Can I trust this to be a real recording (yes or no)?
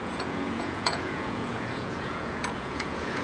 no